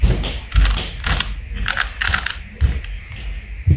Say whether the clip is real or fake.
real